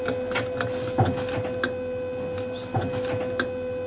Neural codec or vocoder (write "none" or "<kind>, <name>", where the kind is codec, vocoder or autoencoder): none